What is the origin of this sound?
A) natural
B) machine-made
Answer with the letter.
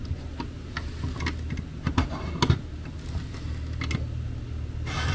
A